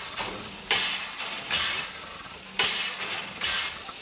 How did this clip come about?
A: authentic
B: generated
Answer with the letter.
A